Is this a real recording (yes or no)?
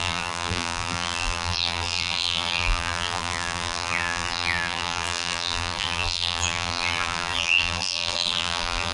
no